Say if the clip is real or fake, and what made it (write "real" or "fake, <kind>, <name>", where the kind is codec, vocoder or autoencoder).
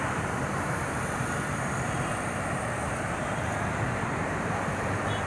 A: fake, vocoder, BigVGAN v2